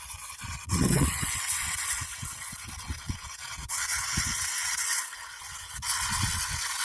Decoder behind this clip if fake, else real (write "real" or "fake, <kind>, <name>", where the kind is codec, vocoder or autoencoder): fake, vocoder, WaveNeXt